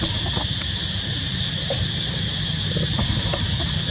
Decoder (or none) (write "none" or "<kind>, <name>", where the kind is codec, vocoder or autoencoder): none